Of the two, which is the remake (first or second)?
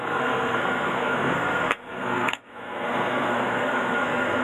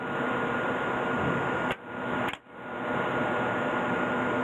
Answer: first